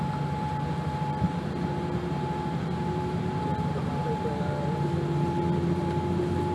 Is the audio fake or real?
fake